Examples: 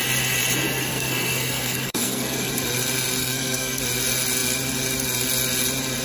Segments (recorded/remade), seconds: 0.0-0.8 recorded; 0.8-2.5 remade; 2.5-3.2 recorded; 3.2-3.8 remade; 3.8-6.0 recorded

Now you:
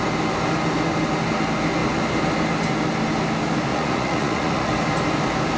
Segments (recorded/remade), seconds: 0.0-3.7 recorded; 3.7-4.7 remade; 4.7-5.6 recorded